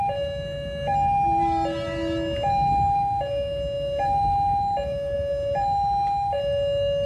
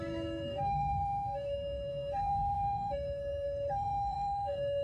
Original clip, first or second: first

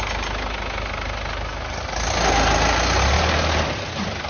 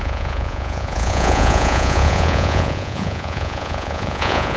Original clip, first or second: first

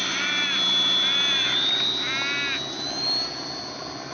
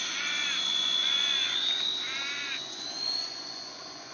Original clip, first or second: first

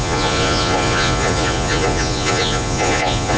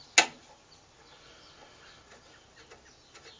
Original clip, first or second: second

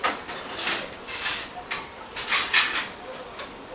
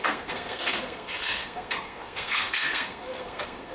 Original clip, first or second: first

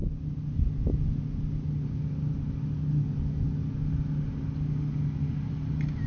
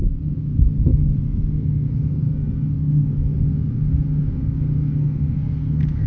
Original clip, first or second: first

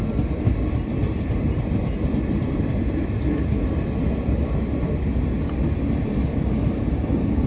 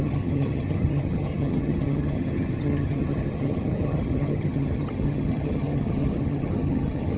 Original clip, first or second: first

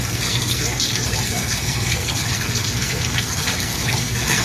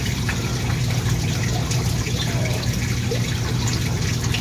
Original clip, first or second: second